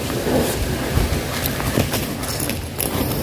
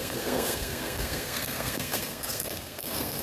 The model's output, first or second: second